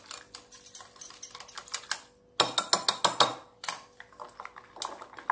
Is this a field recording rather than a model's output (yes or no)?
yes